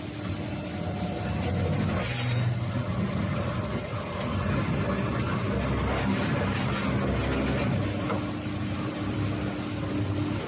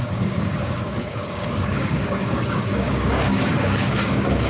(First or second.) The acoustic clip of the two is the first